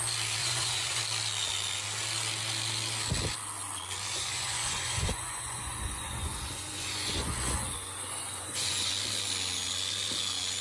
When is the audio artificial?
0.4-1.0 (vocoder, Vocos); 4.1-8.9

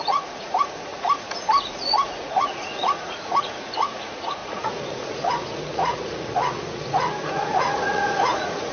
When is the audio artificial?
0.0-8.7 (vocoder, Vocos)